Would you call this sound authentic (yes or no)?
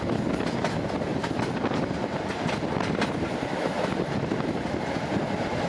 no